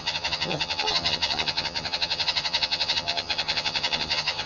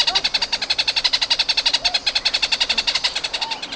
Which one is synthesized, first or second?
first